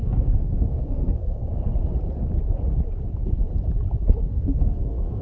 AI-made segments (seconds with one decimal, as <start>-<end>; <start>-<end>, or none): 0.0-1.4; 4.3-5.2

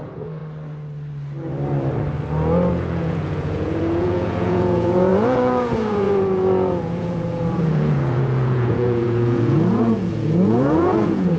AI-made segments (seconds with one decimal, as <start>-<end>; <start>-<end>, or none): 0.0-0.4; 2.7-11.4

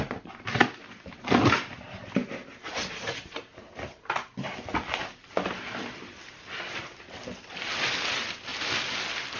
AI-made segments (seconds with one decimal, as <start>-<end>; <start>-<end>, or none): none